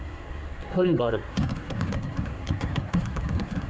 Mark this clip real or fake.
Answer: fake